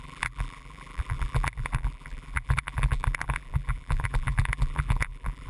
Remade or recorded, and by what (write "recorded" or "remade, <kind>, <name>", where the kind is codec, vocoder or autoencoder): remade, vocoder, BigVGAN v2